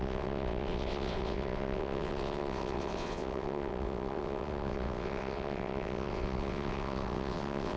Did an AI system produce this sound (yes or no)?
yes